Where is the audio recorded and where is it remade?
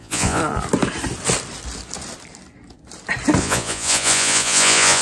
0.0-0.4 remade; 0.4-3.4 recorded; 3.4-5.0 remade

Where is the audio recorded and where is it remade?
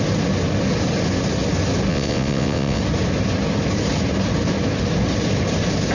0.0-1.9 recorded; 1.9-2.8 remade; 2.8-5.9 recorded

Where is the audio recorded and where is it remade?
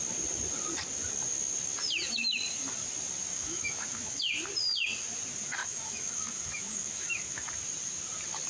0.0-3.3 recorded; 3.3-4.2 remade; 4.2-5.6 recorded; 5.6-7.5 remade; 7.5-8.5 recorded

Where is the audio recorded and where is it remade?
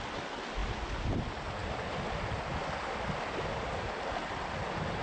0.0-5.0 recorded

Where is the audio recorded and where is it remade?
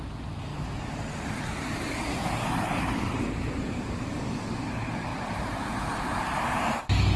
0.0-0.5 recorded; 0.5-4.2 remade; 4.2-5.1 recorded; 5.1-6.8 remade; 6.8-7.2 recorded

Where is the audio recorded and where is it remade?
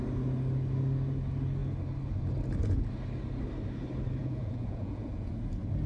0.0-4.2 recorded; 4.2-5.3 remade; 5.3-5.9 recorded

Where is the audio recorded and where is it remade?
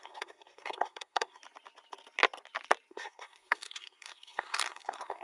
0.0-1.4 remade; 1.4-2.9 recorded; 2.9-5.2 remade